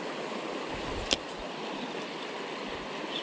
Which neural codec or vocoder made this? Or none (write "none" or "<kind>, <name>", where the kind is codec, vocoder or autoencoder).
none